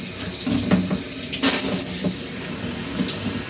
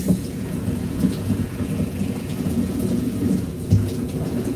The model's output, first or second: second